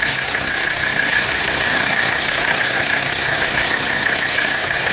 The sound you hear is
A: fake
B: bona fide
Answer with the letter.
A